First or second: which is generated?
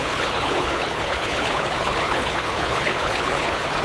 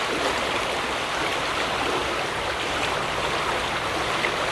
first